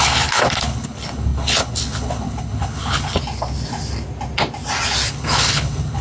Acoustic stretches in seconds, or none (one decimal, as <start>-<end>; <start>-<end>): 3.2-5.1